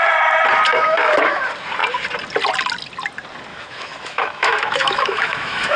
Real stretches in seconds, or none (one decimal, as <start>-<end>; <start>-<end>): 0.0-0.7; 1.4-3.5